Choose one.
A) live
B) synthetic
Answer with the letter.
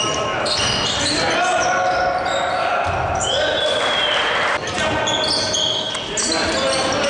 A